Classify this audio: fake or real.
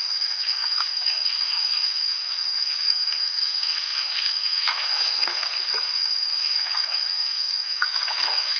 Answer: fake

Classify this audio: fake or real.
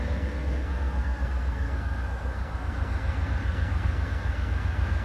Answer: fake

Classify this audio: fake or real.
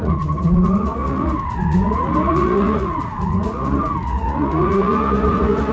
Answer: fake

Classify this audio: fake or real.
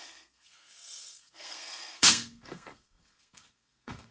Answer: fake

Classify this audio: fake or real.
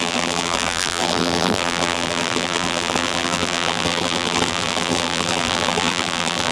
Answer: fake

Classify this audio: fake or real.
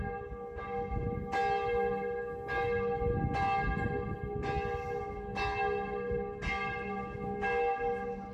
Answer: real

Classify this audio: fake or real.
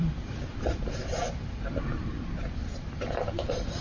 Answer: real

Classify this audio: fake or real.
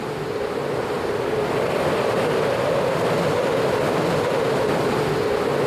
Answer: real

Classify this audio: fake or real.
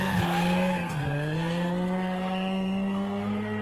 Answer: fake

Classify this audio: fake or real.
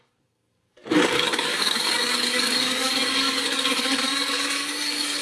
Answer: fake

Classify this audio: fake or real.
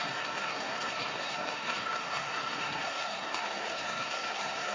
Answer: fake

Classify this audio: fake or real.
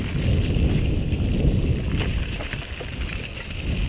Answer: fake